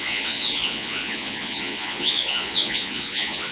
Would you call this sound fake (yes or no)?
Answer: yes